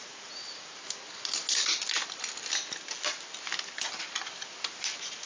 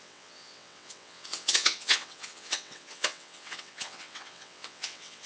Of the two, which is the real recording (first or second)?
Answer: first